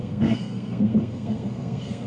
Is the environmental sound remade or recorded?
remade